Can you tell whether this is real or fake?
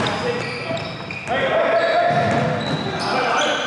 real